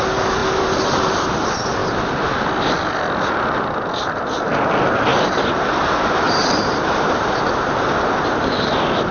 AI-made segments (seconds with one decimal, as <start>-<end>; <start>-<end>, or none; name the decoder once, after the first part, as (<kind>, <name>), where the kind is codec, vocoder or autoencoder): 5.1-7.4 (vocoder, BigVGAN v2)